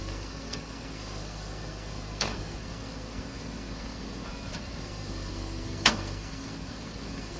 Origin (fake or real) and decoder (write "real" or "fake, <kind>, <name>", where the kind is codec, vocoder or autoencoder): fake, codec, SNAC